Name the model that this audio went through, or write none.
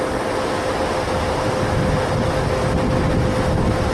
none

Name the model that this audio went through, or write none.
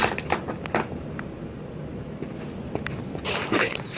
none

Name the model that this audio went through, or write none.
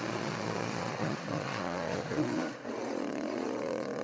vocoder, Vocos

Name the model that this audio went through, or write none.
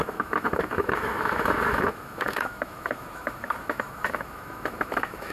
autoencoder, DAC-VAE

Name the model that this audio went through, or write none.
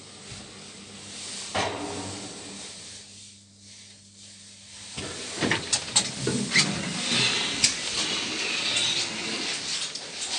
none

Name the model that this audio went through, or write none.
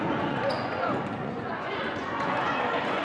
vocoder, Vocos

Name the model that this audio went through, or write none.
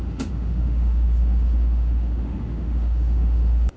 autoencoder, DAC-VAE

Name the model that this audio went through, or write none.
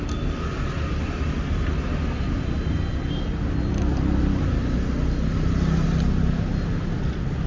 none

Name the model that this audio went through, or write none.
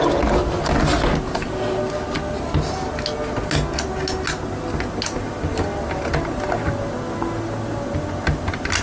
none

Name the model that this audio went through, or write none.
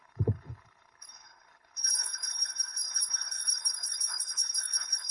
codec, HILCodec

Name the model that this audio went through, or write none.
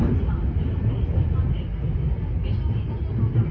none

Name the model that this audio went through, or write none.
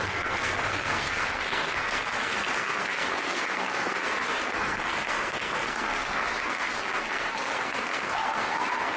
codec, SNAC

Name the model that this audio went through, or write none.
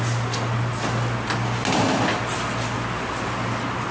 none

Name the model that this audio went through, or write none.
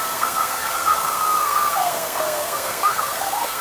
codec, SNAC